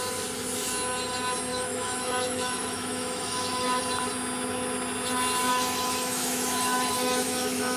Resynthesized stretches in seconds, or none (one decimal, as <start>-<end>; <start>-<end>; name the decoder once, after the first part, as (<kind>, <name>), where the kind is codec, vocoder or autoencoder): 1.5-3.8 (autoencoder, DAC-VAE); 5.5-7.8